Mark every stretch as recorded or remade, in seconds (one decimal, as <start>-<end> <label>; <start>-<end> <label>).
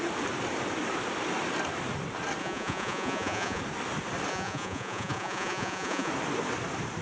0.0-2.4 recorded; 2.4-3.6 remade; 3.6-4.3 recorded; 4.3-6.1 remade; 6.1-7.0 recorded